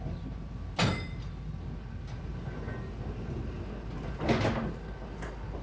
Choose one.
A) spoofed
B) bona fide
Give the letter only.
B